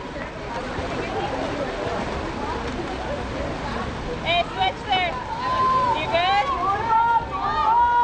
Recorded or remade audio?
recorded